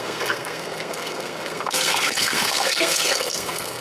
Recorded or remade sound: remade